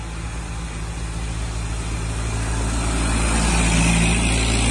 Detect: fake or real real